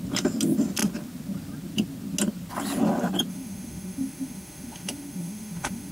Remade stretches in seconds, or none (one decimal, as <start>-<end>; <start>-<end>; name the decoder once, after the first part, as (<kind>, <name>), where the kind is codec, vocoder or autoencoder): 3.3-5.9 (autoencoder, DAC-VAE)